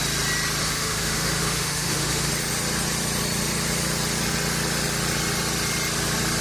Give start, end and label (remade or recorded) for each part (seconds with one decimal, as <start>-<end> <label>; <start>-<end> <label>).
0.0-0.6 recorded; 0.6-2.3 remade; 2.3-6.4 recorded